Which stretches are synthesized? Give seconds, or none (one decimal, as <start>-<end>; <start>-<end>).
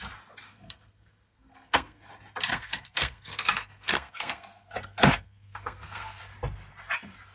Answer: 0.5-2.1; 2.5-6.2